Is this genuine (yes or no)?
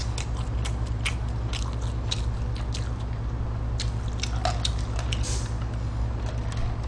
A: yes